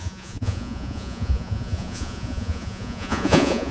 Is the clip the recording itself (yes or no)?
no